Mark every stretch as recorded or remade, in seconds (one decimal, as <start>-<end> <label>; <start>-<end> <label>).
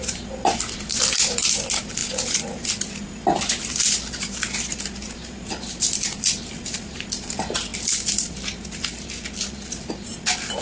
0.0-10.6 recorded